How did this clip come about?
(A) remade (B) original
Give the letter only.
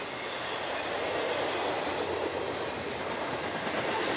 B